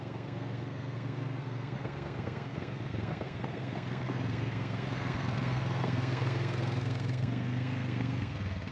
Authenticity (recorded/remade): remade